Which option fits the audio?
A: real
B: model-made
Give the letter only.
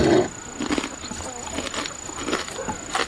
A